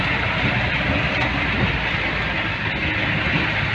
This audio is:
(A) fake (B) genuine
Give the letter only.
B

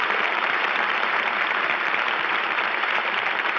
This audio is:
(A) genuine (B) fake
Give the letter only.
B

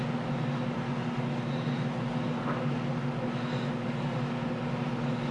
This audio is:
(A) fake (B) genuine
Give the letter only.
B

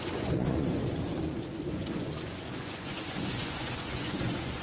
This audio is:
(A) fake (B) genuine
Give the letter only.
A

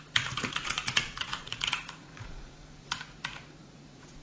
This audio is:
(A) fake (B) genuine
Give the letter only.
A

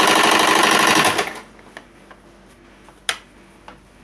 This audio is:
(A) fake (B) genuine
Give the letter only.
B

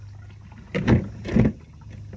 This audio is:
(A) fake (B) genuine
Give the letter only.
B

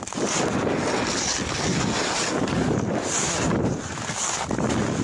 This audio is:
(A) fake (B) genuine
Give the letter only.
B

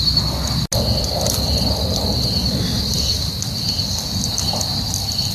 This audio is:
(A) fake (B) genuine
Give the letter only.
B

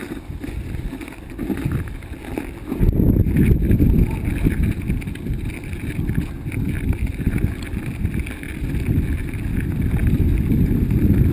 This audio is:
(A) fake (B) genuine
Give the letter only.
B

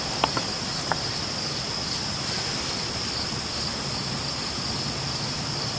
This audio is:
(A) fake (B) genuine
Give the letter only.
B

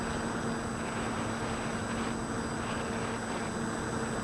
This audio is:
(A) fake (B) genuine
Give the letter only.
B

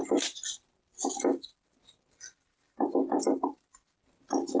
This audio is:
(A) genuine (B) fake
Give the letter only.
A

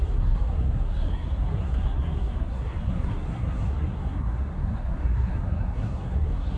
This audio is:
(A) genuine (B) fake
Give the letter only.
B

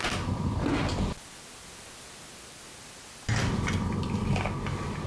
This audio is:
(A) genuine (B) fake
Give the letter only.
A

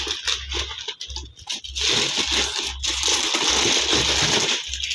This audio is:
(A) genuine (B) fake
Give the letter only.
A